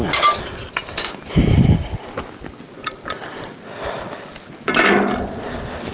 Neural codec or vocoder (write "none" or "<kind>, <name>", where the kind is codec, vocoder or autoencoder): none